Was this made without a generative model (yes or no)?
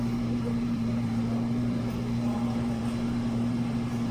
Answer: no